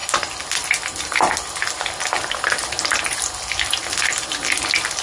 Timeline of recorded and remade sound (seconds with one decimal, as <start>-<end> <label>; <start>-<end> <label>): 0.0-5.0 recorded